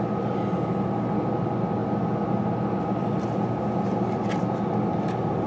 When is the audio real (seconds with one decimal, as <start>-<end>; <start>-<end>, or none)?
0.0-5.5